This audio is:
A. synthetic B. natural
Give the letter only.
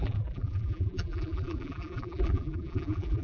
A